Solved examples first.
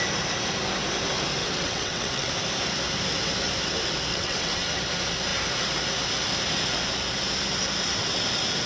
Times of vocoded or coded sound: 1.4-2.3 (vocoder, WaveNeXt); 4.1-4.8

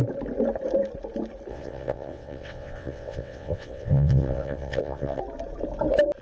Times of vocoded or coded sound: 1.5-5.2 (vocoder, WaveNeXt)